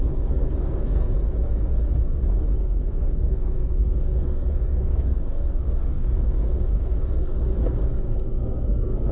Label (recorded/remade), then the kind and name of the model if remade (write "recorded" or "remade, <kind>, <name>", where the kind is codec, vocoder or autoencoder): remade, codec, SNAC